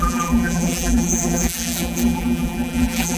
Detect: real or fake fake